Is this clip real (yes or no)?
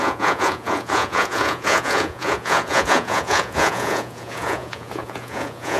no